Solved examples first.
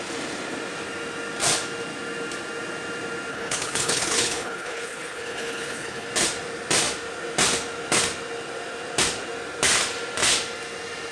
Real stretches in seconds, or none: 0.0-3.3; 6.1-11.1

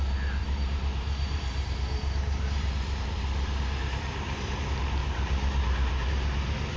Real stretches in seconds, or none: 0.0-0.4; 4.5-5.0; 6.1-6.8

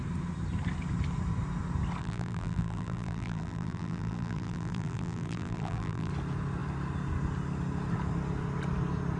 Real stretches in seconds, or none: 0.0-2.0; 6.1-9.2

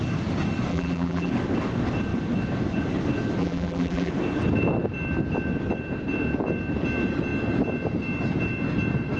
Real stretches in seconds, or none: 0.0-0.7; 1.3-3.4; 4.1-9.2

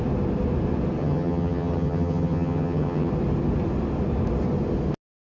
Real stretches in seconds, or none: 0.0-1.0; 3.1-5.3

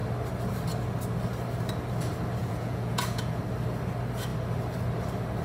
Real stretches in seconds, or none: 0.0-2.4; 3.4-5.4